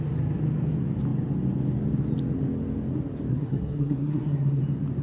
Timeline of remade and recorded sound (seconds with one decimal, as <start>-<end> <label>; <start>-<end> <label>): 0.0-3.3 recorded; 3.3-4.6 remade; 4.6-5.0 recorded